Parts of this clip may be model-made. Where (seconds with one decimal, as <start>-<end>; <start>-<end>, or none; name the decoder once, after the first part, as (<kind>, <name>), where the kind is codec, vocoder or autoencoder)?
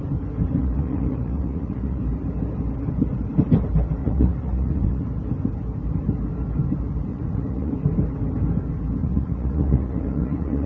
0.6-2.0 (vocoder, Vocos); 4.0-5.0; 7.1-7.7; 9.0-10.7